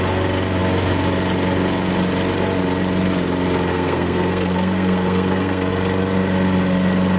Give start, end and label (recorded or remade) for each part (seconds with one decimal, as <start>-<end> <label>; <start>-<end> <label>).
0.0-3.7 recorded; 3.7-5.7 remade; 5.7-7.2 recorded